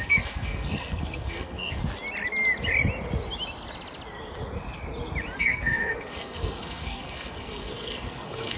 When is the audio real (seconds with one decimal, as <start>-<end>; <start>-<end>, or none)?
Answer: 1.8-5.4